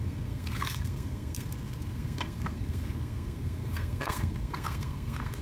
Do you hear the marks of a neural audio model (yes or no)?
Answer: yes